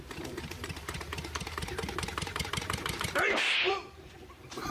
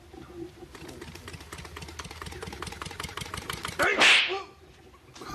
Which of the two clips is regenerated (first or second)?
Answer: first